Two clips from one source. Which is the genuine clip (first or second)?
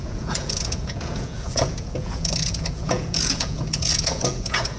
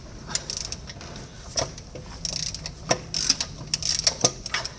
second